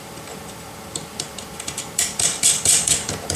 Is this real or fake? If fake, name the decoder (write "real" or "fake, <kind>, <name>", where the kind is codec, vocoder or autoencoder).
fake, vocoder, BigVGAN v2